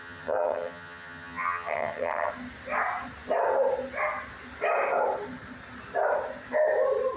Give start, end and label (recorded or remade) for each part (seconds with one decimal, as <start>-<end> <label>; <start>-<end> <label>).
0.0-2.3 remade; 2.3-7.2 recorded